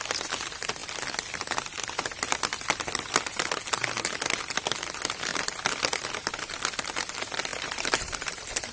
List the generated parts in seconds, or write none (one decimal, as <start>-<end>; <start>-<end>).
7.5-8.7